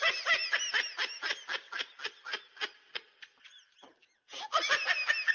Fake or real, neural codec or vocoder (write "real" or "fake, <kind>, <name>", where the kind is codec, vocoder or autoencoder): real